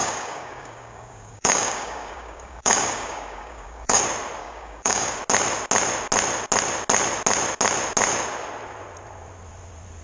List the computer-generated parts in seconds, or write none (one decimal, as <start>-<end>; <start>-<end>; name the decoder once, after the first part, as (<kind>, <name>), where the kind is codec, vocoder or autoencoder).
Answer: 0.0-4.0 (codec, DAC); 4.4-5.2